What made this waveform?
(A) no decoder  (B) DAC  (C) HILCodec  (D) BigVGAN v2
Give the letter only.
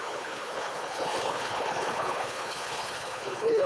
C